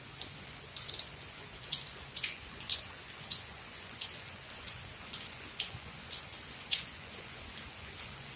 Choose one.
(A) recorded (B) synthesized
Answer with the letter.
B